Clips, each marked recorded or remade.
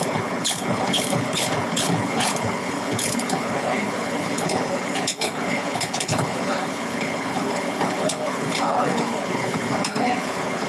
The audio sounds remade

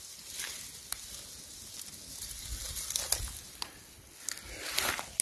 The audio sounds recorded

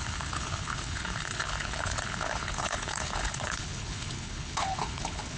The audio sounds remade